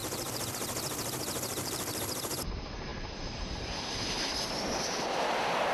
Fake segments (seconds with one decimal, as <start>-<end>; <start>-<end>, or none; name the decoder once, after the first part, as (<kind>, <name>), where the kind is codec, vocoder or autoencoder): 0.0-0.5 (vocoder, BigVGAN v2); 1.5-2.0; 2.9-4.3